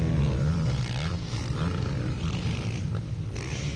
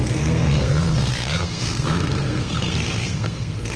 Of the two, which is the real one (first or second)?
first